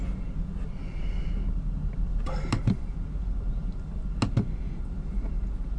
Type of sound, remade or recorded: recorded